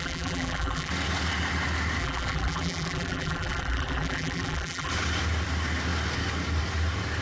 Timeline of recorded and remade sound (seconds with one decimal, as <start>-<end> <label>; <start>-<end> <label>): 0.0-0.9 remade; 0.9-2.0 recorded; 2.0-4.9 remade; 4.9-7.2 recorded